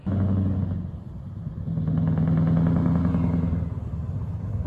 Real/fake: real